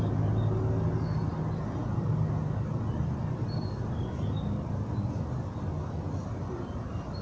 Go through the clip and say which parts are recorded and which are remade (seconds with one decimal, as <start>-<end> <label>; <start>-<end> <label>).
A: 0.0-7.2 recorded